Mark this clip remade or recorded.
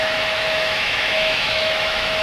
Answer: remade